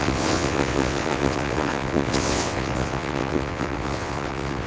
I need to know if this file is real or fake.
fake